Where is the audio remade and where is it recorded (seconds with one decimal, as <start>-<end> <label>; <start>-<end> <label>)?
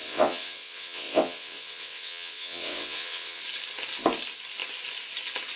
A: 0.0-3.4 remade; 3.4-5.6 recorded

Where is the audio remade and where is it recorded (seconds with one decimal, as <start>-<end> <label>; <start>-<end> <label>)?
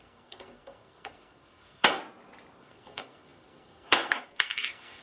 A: 0.0-2.0 remade; 2.0-2.6 recorded; 2.6-5.0 remade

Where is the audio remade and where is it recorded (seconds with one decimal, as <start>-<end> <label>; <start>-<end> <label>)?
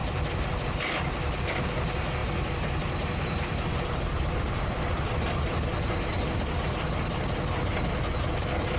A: 0.0-0.5 remade; 0.5-8.8 recorded